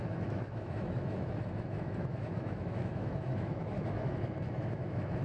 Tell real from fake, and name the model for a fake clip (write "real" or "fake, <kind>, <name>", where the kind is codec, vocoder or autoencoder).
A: fake, autoencoder, DAC-VAE